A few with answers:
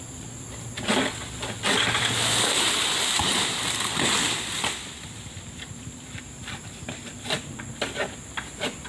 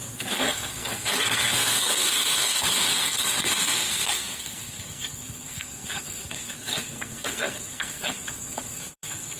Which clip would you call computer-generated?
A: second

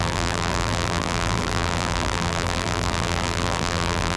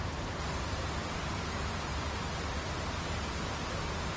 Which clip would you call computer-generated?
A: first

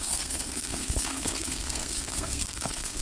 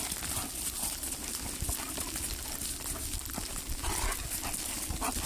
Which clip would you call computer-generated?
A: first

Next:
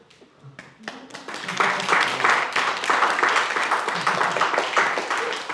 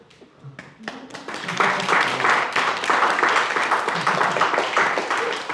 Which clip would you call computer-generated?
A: second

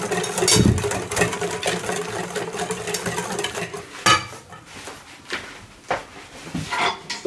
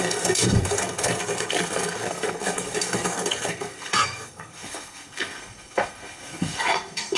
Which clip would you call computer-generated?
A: second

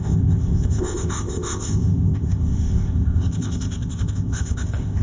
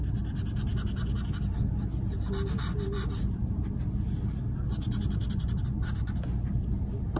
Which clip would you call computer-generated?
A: first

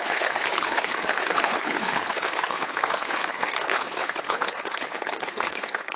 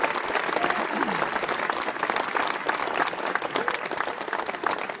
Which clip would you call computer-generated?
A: first